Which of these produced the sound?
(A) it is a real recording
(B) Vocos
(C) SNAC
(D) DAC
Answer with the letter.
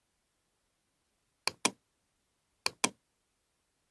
A